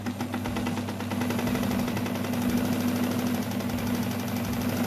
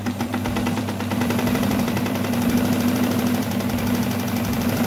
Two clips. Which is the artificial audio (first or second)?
second